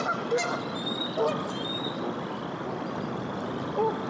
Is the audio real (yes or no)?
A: yes